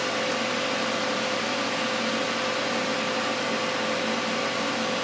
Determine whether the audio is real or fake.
real